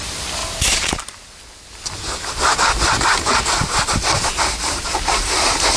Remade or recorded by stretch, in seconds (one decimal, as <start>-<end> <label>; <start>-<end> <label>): 0.0-5.8 recorded